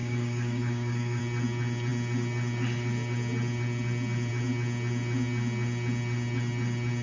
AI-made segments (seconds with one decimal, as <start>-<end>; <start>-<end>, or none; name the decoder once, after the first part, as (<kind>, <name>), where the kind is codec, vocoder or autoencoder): 0.0-1.2 (codec, DAC)